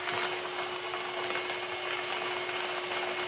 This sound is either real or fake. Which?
real